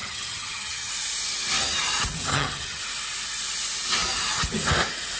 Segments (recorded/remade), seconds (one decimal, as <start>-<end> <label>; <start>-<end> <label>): 0.0-0.9 remade; 0.9-2.3 recorded; 2.3-2.8 remade; 2.8-5.2 recorded